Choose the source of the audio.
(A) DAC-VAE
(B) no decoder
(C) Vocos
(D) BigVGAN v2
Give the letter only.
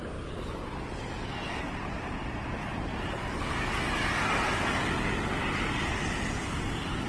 B